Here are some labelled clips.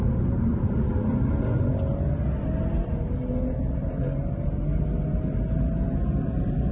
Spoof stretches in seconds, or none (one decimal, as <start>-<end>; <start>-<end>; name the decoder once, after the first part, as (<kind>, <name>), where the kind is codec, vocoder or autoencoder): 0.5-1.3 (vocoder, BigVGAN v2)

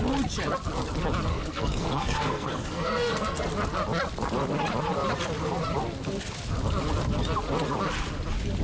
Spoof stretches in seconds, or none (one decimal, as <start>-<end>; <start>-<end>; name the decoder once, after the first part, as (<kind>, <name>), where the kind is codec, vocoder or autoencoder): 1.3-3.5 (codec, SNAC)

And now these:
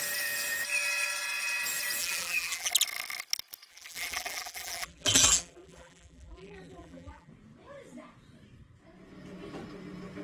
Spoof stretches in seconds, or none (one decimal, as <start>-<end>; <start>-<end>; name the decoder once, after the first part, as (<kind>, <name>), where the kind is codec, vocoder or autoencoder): 2.0-2.7 (vocoder, BigVGAN v2); 3.7-7.3

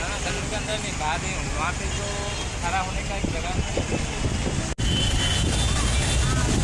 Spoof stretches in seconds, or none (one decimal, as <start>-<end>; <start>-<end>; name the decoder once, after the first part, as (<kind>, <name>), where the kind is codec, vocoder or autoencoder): none

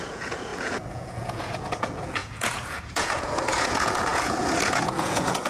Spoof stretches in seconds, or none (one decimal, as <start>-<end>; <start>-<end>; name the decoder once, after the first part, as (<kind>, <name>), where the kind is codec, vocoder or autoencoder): 0.0-5.5 (vocoder, Vocos)

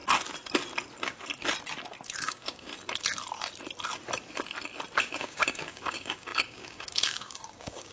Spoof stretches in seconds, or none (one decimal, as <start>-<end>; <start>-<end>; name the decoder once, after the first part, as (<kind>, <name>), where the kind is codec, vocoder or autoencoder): 2.2-2.7 (codec, DAC); 5.0-7.9

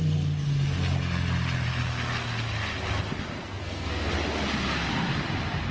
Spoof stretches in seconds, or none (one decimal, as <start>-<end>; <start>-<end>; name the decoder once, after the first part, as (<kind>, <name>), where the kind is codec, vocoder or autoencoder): 3.4-4.1 (codec, SNAC)

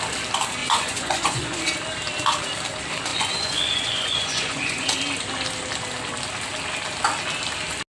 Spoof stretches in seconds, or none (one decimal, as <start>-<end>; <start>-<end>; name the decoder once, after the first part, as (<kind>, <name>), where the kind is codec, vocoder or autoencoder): 0.6-1.6 (vocoder, Vocos); 3.1-4.9